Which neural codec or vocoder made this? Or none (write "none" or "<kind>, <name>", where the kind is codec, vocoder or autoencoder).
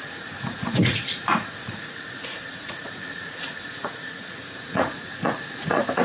vocoder, Vocos